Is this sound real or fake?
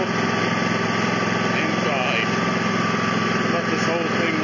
real